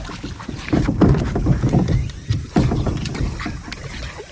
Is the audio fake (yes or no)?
no